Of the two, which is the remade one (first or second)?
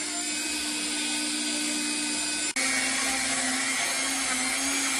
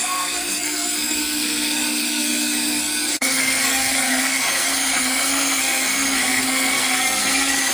second